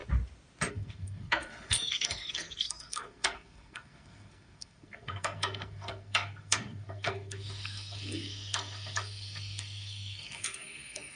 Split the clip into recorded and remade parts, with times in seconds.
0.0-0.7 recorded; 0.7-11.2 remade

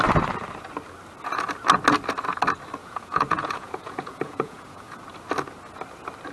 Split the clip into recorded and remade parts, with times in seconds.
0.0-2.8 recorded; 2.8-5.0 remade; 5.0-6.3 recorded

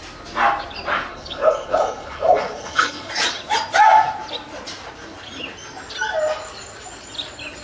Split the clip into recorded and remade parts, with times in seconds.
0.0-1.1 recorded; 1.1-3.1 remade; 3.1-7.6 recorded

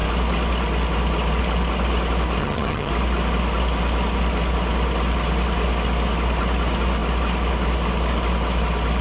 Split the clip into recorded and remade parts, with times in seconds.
0.0-2.4 recorded; 2.4-2.9 remade; 2.9-9.0 recorded